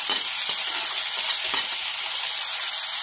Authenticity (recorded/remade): recorded